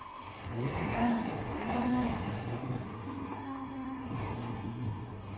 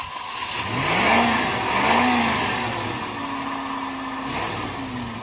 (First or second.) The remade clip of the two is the first